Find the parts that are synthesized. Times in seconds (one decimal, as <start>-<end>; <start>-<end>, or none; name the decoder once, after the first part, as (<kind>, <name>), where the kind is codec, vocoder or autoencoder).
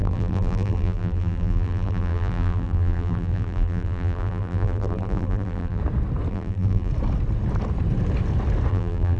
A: 0.0-5.8 (vocoder, BigVGAN v2); 6.3-6.9; 8.7-9.2